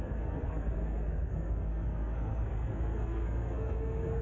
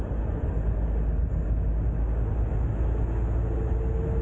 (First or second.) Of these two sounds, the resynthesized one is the first